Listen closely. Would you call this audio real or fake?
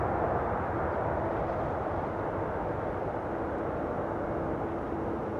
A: real